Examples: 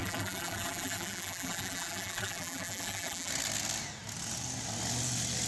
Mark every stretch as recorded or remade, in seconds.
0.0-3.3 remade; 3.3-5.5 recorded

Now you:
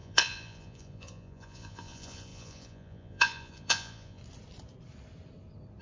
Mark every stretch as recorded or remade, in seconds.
0.0-4.2 remade; 4.2-5.8 recorded